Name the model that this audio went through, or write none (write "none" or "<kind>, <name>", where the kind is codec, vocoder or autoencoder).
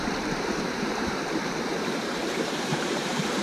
vocoder, BigVGAN v2